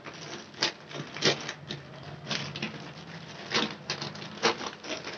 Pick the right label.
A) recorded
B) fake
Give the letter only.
A